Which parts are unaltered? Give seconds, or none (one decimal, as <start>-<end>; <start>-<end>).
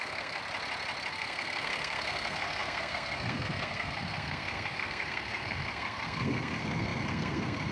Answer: 0.4-1.1